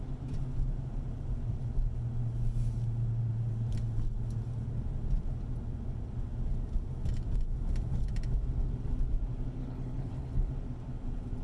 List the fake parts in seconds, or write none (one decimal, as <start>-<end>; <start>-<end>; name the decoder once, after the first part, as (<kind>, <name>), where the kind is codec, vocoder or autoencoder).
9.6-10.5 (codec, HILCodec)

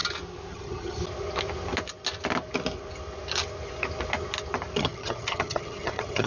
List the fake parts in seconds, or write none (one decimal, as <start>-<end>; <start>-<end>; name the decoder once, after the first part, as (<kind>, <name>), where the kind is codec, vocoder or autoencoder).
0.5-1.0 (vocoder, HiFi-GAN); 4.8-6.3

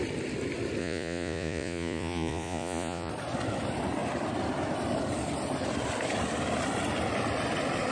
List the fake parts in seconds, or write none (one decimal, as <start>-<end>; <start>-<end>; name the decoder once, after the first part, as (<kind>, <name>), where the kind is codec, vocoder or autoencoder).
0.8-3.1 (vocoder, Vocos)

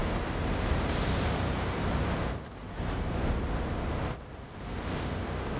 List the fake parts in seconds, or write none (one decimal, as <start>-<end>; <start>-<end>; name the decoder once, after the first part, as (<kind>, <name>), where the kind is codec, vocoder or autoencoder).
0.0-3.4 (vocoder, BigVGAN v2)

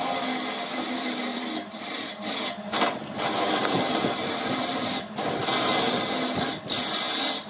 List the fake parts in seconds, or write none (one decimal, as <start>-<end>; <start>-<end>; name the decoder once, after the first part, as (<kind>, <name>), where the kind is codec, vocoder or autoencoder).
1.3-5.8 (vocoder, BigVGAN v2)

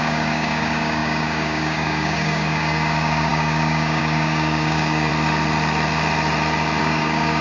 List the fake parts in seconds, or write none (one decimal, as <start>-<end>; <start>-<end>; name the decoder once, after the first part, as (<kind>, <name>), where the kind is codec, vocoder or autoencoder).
0.0-5.1 (codec, DAC); 6.8-7.4

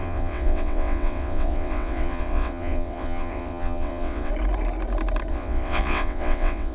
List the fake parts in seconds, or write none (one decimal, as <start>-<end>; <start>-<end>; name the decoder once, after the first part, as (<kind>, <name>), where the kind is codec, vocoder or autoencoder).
0.0-4.3 (vocoder, WaveNeXt); 5.3-6.7

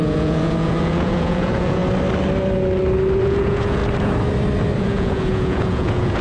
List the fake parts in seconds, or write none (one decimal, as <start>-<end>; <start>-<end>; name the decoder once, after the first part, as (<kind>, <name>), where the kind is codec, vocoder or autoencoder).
0.0-1.8 (vocoder, Vocos); 3.2-3.8; 4.8-6.2